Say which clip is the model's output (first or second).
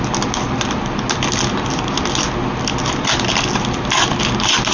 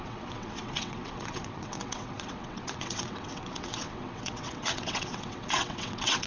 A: second